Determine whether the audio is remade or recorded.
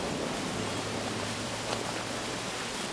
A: remade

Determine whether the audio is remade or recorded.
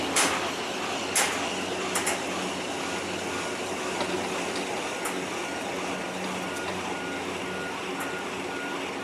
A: recorded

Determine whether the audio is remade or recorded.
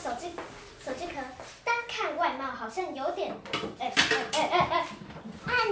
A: remade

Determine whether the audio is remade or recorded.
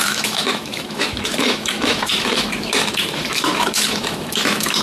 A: remade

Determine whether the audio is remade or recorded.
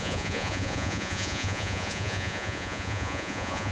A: remade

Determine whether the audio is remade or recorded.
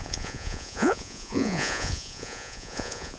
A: remade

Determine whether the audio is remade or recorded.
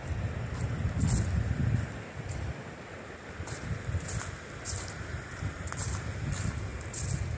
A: recorded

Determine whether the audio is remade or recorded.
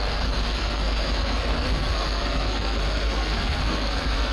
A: remade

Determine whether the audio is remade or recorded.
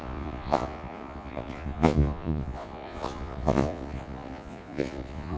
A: remade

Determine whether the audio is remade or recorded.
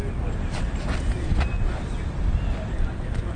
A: recorded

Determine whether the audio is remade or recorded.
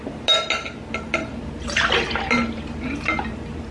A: recorded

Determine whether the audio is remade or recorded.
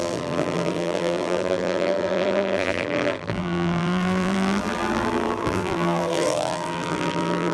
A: remade